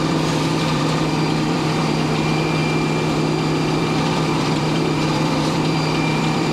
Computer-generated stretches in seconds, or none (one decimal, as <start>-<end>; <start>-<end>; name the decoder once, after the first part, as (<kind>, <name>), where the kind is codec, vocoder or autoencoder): 0.0-2.6 (vocoder, BigVGAN v2); 3.8-6.5